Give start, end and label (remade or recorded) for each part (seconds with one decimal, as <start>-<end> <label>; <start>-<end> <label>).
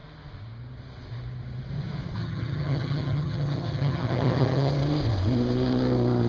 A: 0.0-2.2 recorded; 2.2-4.7 remade; 4.7-6.3 recorded